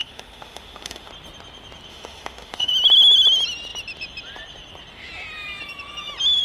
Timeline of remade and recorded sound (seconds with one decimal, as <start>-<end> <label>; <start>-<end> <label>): 0.0-1.1 remade; 1.1-1.9 recorded; 1.9-2.7 remade; 2.7-6.4 recorded